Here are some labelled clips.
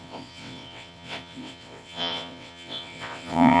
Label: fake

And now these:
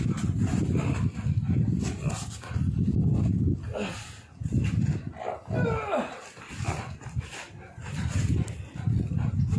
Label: real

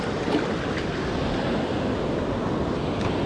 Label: real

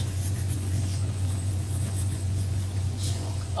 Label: fake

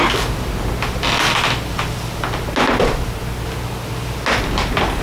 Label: real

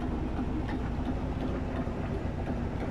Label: real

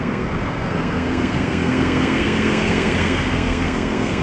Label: fake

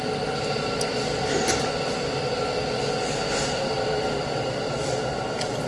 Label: real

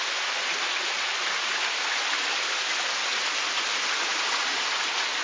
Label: real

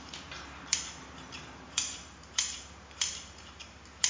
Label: fake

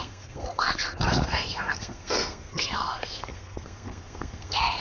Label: fake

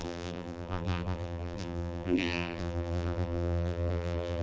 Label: fake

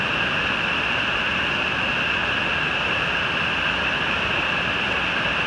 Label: real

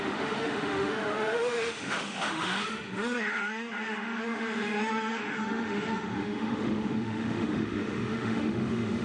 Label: fake